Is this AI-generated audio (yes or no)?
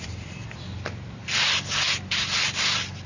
no